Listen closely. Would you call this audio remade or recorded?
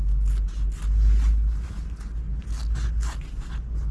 recorded